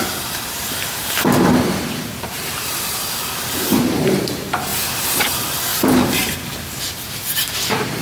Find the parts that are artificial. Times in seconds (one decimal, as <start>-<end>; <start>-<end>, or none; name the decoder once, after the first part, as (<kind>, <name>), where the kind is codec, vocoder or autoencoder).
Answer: 0.0-4.7 (vocoder, BigVGAN v2); 5.2-8.0